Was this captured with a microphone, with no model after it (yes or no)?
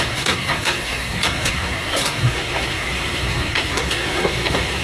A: no